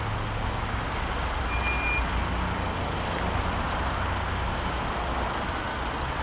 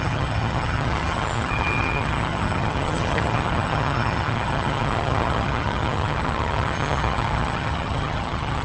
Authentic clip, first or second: first